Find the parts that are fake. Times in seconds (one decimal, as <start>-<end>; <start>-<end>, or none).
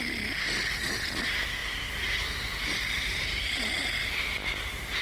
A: 1.6-3.8